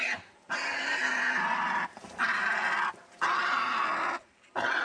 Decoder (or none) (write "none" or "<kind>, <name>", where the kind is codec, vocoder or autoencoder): none